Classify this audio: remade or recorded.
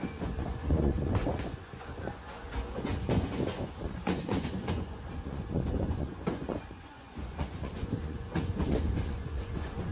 remade